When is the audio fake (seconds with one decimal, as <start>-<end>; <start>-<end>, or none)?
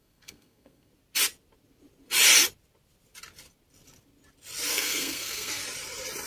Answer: 0.0-0.9; 4.7-5.6